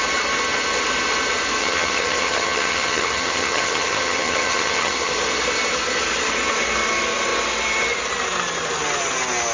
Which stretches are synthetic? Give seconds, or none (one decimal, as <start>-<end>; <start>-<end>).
1.6-5.1